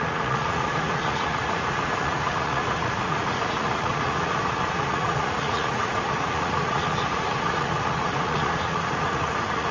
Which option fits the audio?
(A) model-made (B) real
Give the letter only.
A